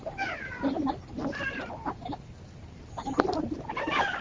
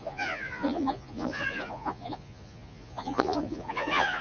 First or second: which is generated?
second